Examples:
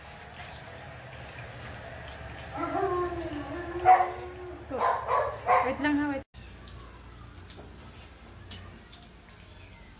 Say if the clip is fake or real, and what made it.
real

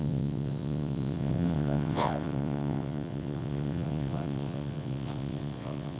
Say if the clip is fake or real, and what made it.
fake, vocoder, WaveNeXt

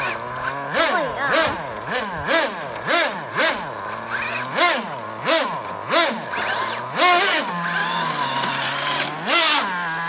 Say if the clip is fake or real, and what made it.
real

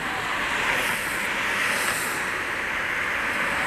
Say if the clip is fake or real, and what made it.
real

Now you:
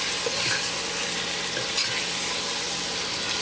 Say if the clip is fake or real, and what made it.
real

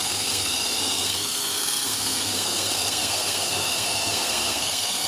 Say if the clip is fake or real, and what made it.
fake, codec, SNAC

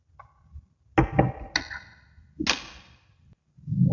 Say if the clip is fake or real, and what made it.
real